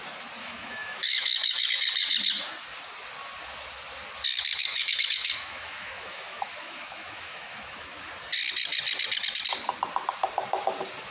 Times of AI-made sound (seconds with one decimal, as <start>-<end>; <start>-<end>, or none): 0.4-1.7; 4.7-8.0